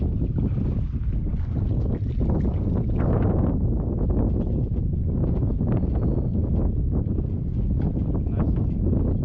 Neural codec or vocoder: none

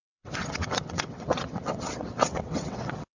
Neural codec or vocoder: vocoder, WaveNeXt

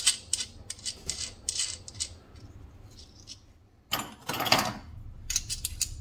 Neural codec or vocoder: none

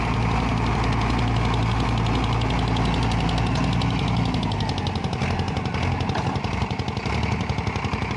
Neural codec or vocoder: none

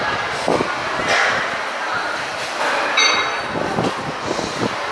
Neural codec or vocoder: none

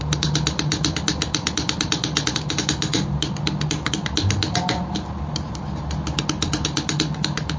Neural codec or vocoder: none